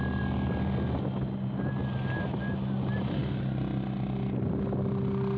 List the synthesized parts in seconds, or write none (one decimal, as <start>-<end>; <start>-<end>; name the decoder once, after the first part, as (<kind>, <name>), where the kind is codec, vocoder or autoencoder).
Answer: none